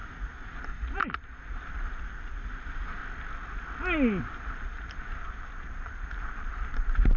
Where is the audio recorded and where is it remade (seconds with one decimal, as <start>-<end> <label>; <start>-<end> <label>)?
0.0-3.0 remade; 3.0-4.2 recorded; 4.2-7.2 remade